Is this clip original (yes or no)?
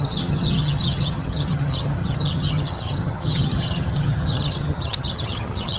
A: no